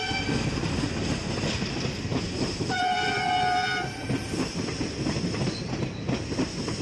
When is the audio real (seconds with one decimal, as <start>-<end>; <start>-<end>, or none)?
0.0-2.1; 5.2-6.8